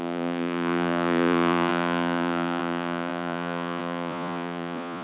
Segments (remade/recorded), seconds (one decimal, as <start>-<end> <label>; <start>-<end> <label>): 0.0-5.0 remade